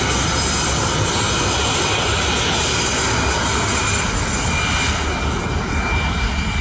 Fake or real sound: real